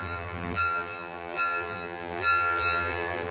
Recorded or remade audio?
remade